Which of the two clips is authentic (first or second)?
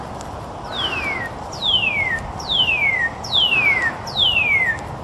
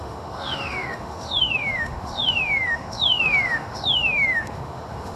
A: first